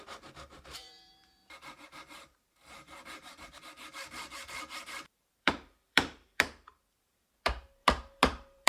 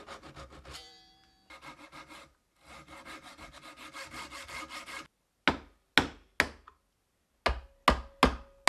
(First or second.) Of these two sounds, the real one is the second